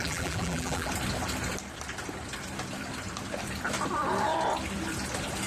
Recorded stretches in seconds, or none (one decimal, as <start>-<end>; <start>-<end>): 0.9-5.5